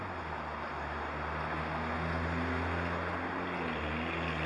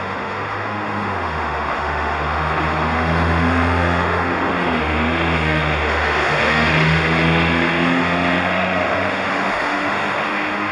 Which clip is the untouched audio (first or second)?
first